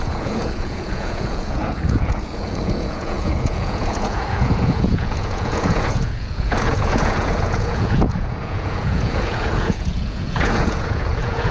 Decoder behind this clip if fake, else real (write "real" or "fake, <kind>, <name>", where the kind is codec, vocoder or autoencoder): fake, vocoder, Vocos